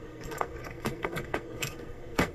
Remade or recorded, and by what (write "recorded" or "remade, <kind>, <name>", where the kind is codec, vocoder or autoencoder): remade, codec, SNAC